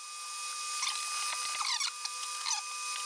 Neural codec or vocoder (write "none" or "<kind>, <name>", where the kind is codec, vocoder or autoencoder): none